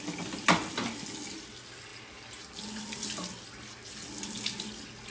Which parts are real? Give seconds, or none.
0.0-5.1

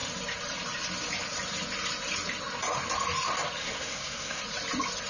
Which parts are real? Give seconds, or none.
0.0-3.6; 4.4-5.1

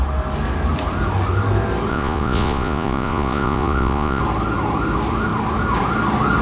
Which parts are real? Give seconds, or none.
0.0-1.9; 4.2-6.4

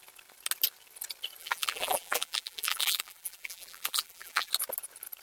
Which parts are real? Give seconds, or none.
0.0-1.4; 4.5-5.2

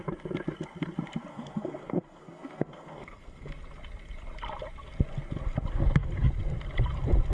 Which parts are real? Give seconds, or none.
0.0-1.3; 3.5-7.3